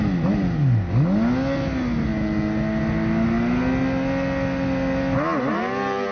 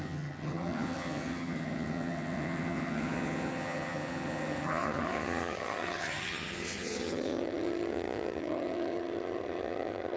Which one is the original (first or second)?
first